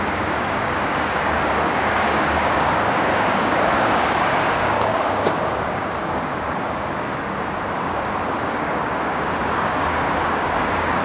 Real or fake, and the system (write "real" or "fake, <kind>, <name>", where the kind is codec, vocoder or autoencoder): fake, codec, DAC